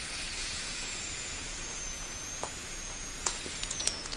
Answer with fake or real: fake